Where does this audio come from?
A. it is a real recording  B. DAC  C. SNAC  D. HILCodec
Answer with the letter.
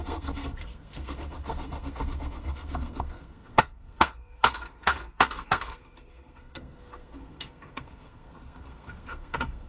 C